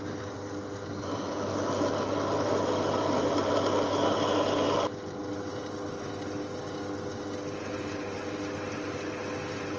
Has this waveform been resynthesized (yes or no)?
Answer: no